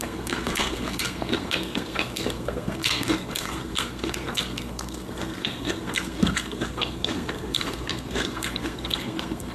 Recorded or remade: remade